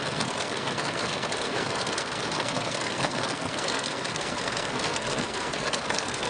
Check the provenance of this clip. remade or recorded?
remade